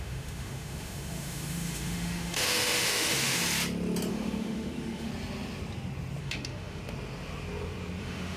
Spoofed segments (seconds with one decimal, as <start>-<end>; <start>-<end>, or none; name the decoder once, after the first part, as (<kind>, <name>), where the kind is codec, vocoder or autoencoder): 0.0-3.4 (autoencoder, DAC-VAE); 4.1-5.1; 6.2-6.8; 8.0-8.4